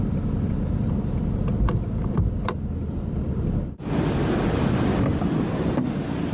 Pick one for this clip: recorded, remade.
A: recorded